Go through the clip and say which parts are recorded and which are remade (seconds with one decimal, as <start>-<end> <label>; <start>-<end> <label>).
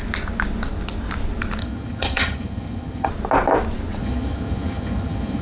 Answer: 0.0-1.6 recorded; 1.6-3.1 remade; 3.1-4.0 recorded; 4.0-5.4 remade